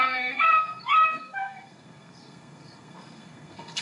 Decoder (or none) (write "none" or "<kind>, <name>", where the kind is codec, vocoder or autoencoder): codec, SNAC